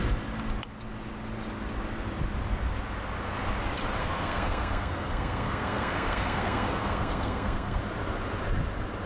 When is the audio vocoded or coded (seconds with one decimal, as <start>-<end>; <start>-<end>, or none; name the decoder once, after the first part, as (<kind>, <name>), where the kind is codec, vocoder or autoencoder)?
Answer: 4.0-7.8 (codec, SNAC)